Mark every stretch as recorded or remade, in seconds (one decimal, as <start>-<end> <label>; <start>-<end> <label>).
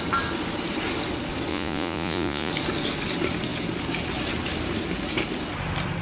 0.0-1.5 recorded; 1.5-2.5 remade; 2.5-6.0 recorded